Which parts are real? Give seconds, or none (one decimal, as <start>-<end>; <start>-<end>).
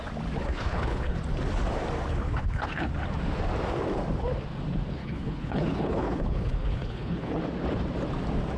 0.0-0.4; 1.2-2.1; 2.9-5.0; 7.4-8.6